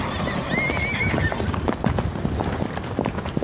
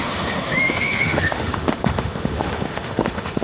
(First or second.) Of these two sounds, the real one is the first